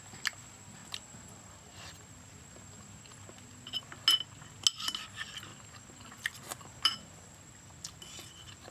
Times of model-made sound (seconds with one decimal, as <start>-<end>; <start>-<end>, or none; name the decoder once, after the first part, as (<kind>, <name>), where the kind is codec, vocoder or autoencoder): 0.8-3.8 (vocoder, BigVGAN v2); 5.5-7.7